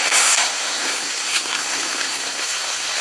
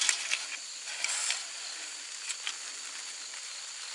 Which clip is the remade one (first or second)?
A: first